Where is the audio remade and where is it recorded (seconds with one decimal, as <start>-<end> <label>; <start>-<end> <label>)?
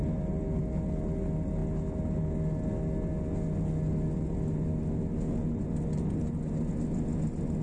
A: 0.0-7.6 recorded